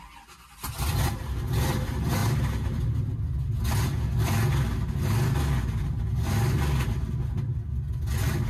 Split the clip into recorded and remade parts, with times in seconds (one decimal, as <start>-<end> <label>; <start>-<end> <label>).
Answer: 0.0-2.2 recorded; 2.2-3.1 remade; 3.1-8.5 recorded

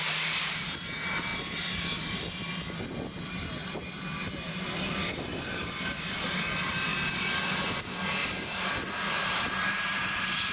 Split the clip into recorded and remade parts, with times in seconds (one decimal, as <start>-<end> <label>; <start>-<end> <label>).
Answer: 0.0-5.3 recorded; 5.3-6.4 remade; 6.4-8.2 recorded; 8.2-10.5 remade

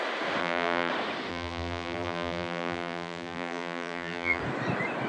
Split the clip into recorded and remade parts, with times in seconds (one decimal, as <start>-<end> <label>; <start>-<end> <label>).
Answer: 0.0-0.4 recorded; 0.4-0.9 remade; 0.9-1.3 recorded; 1.3-4.4 remade; 4.4-5.1 recorded

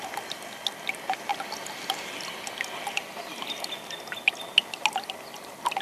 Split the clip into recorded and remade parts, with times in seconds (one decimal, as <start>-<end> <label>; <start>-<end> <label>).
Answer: 0.0-5.8 recorded

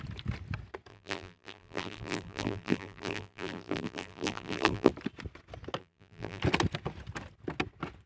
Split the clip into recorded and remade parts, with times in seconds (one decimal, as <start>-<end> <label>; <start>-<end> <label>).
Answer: 0.0-0.9 recorded; 0.9-4.9 remade; 4.9-5.8 recorded; 5.8-6.4 remade; 6.4-8.1 recorded

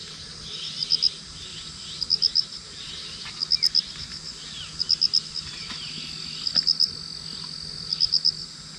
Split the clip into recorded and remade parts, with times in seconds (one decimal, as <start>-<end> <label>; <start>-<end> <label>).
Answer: 0.0-8.8 recorded

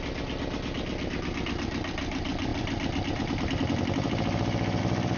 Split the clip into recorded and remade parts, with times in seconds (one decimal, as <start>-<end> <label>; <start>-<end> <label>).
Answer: 0.0-5.2 recorded

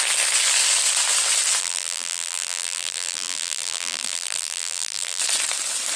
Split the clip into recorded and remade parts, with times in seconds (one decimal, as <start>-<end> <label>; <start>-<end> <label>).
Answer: 0.0-1.6 recorded; 1.6-5.2 remade; 5.2-6.0 recorded